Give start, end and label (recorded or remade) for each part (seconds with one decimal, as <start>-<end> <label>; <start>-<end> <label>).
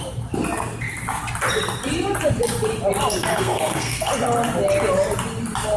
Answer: 0.0-3.3 recorded; 3.3-4.1 remade; 4.1-5.8 recorded